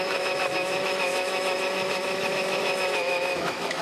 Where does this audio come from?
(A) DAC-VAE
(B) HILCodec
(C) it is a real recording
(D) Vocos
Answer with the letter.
A